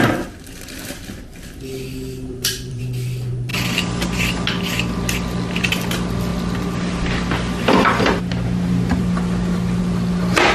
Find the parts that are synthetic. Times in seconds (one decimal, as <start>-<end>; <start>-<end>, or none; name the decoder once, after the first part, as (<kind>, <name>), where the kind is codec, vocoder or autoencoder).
2.3-2.8 (vocoder, BigVGAN v2)